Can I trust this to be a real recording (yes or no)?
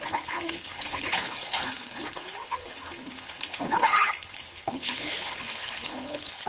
no